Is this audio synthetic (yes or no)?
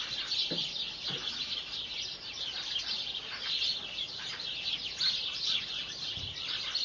no